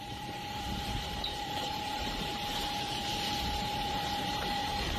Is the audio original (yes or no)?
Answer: no